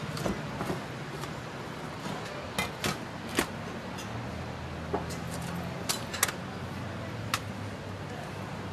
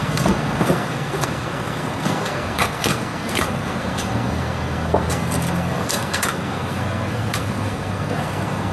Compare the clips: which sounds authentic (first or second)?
first